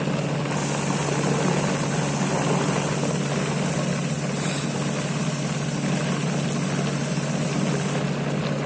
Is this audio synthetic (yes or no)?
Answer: no